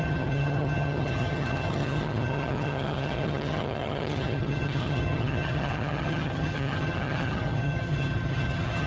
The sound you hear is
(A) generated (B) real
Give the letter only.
A